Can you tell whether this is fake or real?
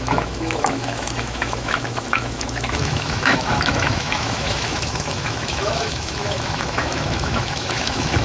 fake